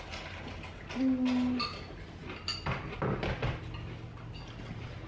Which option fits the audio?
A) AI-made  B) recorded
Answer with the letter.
B